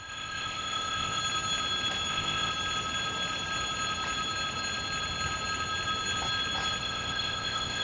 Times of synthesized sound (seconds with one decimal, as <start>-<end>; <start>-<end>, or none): 0.0-1.2; 2.1-2.5; 6.8-7.8